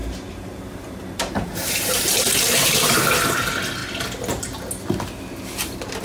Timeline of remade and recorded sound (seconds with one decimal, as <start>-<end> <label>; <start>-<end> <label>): 0.0-3.0 remade; 3.0-6.0 recorded